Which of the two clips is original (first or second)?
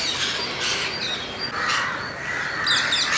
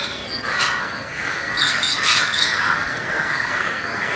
first